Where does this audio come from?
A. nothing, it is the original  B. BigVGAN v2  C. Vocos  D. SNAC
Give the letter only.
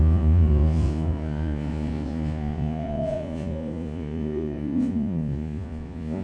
C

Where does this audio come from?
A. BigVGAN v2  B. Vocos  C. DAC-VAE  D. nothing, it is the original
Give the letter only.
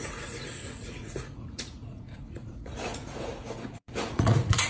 B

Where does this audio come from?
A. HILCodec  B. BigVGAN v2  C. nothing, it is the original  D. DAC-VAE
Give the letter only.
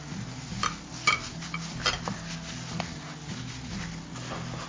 C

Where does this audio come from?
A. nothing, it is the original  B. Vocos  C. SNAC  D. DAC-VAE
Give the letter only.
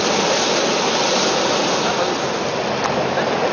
A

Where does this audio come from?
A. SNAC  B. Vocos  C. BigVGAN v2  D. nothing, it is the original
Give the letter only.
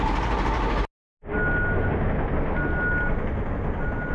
D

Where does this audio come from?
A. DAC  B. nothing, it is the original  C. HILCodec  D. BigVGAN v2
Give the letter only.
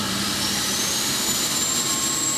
D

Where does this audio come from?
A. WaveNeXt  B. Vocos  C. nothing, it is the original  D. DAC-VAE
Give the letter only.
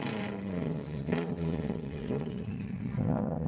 A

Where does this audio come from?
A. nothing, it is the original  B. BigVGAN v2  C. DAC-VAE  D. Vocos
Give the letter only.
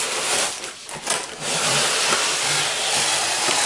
A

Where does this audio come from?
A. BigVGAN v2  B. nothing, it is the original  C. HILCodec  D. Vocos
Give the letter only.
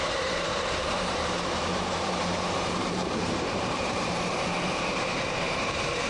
A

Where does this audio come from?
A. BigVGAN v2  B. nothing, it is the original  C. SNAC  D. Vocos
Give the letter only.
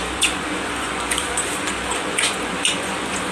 D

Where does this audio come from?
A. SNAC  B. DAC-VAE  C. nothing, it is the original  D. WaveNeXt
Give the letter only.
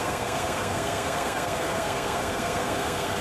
A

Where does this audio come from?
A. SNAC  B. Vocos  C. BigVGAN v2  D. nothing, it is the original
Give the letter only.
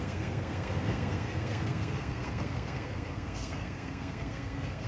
A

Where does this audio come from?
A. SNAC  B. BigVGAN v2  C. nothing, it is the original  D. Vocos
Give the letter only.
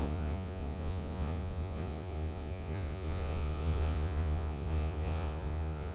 D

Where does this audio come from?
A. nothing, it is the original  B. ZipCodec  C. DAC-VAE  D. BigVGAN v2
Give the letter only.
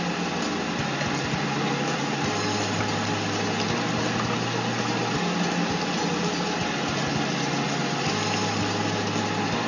A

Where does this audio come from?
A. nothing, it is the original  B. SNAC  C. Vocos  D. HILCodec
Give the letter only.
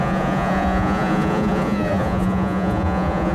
C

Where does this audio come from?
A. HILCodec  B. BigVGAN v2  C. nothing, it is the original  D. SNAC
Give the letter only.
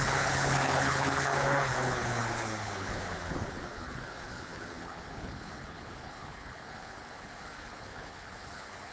A